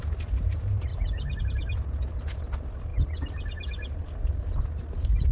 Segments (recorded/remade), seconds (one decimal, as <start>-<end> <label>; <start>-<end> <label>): 0.0-5.3 recorded